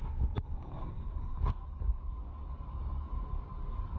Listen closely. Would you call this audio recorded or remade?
remade